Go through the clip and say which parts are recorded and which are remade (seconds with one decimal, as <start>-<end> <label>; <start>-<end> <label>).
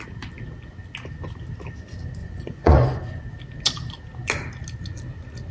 0.0-2.2 recorded; 2.2-3.0 remade; 3.0-5.5 recorded